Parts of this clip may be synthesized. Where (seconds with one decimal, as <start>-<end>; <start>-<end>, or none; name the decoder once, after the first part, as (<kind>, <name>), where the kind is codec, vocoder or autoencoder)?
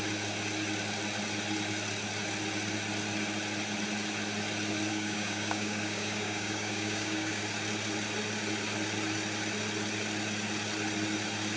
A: 4.9-7.4 (codec, DAC)